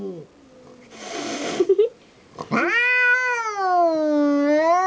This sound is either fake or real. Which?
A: real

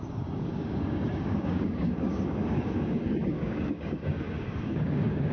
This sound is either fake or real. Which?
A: fake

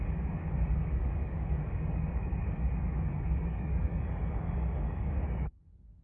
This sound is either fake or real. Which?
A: fake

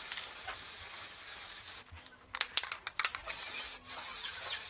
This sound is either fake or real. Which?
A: real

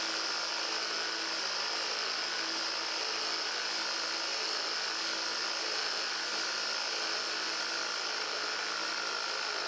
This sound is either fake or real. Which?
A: real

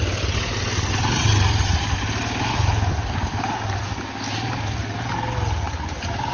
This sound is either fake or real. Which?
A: real